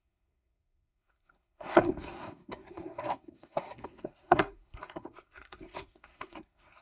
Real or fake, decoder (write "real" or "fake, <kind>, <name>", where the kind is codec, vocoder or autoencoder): fake, codec, SNAC